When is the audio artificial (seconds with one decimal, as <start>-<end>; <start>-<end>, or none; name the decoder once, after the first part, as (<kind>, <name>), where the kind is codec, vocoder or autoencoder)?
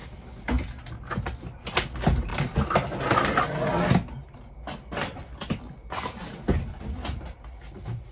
none